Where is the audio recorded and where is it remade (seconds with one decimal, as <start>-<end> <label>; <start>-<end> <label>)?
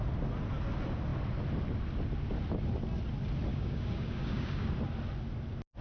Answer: 0.0-3.5 recorded; 3.5-4.7 remade; 4.7-5.8 recorded